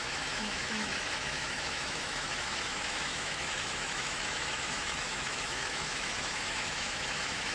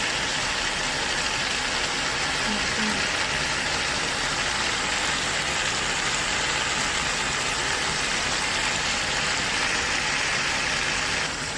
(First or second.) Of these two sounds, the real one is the second